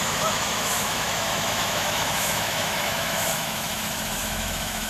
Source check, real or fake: fake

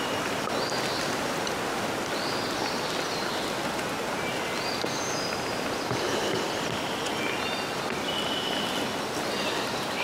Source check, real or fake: real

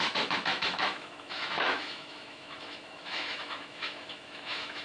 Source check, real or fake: fake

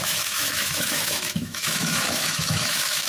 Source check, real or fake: fake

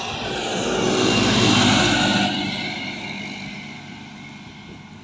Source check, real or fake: real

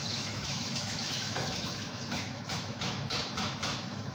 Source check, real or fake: fake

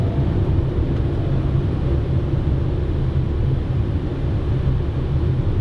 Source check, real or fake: real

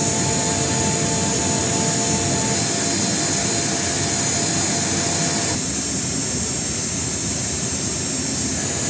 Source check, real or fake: real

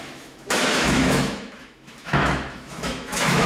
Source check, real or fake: fake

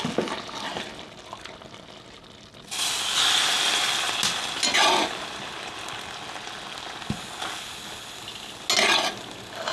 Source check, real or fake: real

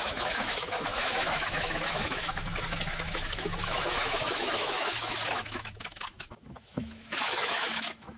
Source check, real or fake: fake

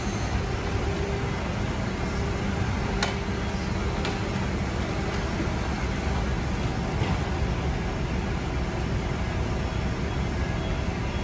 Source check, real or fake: real